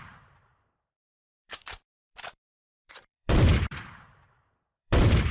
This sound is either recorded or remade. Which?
remade